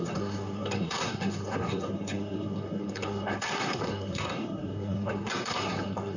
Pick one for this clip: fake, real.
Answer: fake